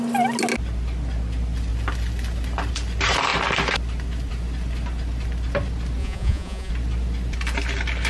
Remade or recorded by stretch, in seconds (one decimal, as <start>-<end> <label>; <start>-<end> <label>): 0.0-6.0 recorded; 6.0-6.7 remade; 6.7-8.1 recorded